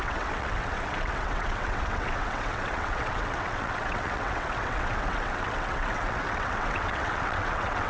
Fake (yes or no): yes